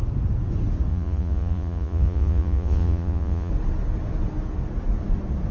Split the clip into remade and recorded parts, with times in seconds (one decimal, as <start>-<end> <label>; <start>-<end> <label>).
0.0-0.9 recorded; 0.9-3.5 remade; 3.5-5.5 recorded